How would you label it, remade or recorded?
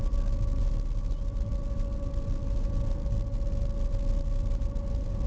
recorded